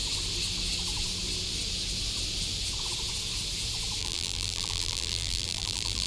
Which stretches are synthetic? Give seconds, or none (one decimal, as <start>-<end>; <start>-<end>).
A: 4.0-6.1